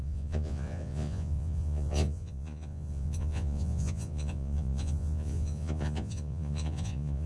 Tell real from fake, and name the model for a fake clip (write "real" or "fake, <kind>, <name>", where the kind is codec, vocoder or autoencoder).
fake, vocoder, Vocos